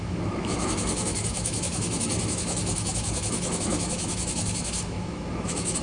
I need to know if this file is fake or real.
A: fake